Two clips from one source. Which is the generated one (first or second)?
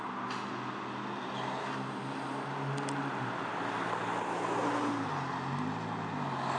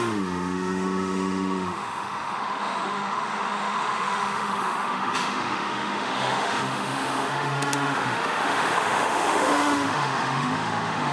second